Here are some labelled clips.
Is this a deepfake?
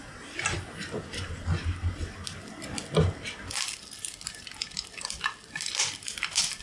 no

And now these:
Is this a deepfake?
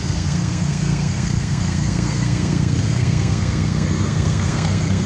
yes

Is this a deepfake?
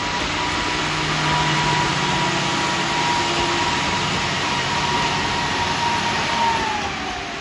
no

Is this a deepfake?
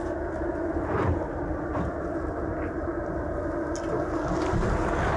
no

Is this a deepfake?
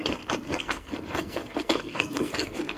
yes